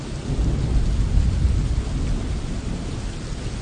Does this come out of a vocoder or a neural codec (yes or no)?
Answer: no